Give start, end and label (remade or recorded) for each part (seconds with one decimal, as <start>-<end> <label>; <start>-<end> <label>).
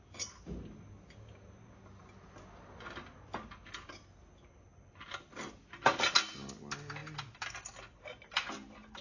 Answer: 0.0-9.0 recorded